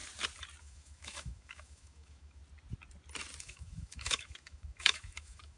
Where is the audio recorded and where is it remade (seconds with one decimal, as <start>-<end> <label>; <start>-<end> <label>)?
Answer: 0.0-0.6 recorded; 0.6-2.4 remade; 2.4-3.4 recorded; 3.4-5.6 remade